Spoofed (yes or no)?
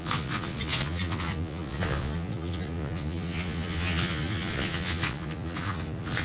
yes